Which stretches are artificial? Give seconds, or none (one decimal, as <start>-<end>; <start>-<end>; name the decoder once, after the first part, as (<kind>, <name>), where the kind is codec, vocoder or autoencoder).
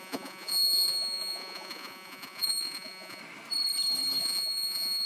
0.0-3.2 (vocoder, Vocos); 4.2-5.1